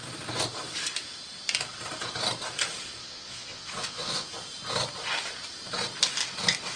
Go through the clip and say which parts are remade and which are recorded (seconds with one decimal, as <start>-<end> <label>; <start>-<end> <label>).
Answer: 0.0-3.0 recorded; 3.0-4.3 remade; 4.3-6.8 recorded